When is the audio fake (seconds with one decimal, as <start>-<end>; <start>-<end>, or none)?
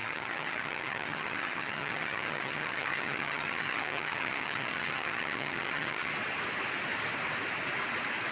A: 0.0-6.1